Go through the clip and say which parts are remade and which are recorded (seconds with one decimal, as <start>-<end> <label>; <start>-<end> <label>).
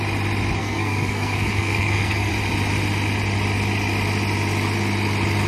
0.0-0.6 recorded; 0.6-2.3 remade; 2.3-5.5 recorded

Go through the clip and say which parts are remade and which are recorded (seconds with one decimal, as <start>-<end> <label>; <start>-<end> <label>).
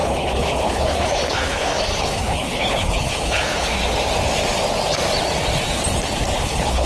0.0-3.8 remade; 3.8-6.4 recorded; 6.4-6.9 remade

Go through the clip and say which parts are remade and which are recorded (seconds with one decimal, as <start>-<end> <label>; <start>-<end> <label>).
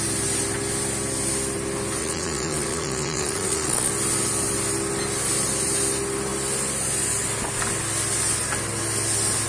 0.0-2.0 recorded; 2.0-3.9 remade; 3.9-9.5 recorded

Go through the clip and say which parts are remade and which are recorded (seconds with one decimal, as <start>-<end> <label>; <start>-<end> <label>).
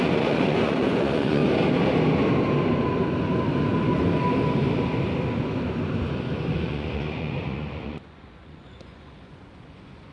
0.0-1.4 remade; 1.4-6.5 recorded; 6.5-10.1 remade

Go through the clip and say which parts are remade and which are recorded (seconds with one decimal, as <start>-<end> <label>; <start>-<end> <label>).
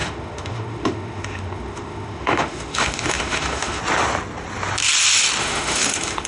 0.0-3.8 remade; 3.8-5.4 recorded; 5.4-6.3 remade